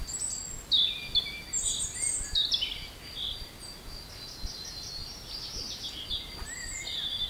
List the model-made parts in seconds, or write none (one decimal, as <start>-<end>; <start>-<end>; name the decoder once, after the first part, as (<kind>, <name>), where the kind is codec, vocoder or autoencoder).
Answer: none